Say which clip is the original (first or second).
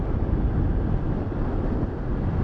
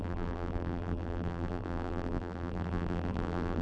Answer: first